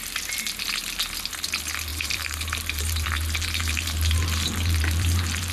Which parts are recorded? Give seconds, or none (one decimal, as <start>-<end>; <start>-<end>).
0.0-1.9